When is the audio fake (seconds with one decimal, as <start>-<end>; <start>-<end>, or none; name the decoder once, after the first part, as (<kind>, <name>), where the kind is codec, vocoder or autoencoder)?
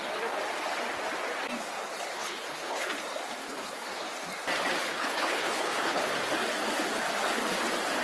2.1-2.9 (codec, HILCodec); 3.4-4.1; 4.8-6.1